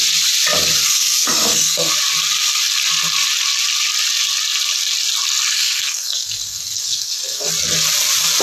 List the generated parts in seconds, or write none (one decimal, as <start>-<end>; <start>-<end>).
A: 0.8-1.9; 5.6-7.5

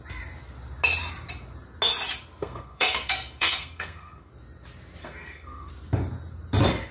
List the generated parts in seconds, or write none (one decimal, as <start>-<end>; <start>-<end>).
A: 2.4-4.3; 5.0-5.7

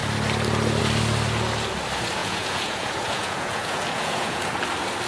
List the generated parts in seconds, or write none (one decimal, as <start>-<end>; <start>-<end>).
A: 2.2-4.5

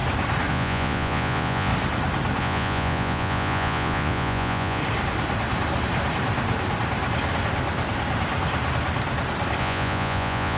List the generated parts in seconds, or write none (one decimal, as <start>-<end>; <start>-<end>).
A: 0.5-1.7; 2.4-4.8; 9.6-10.6

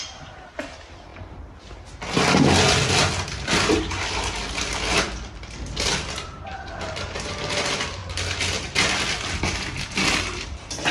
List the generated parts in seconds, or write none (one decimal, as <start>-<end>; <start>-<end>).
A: 0.0-1.1; 4.9-8.0; 9.8-10.9

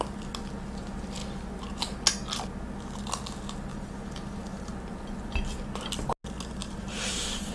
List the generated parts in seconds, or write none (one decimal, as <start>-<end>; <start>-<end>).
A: 3.7-4.7; 6.6-7.5

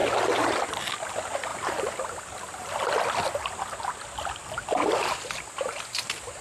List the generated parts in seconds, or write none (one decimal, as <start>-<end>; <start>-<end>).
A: 1.5-5.3

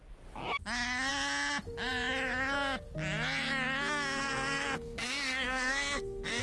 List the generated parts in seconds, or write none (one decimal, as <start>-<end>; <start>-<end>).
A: 4.2-6.4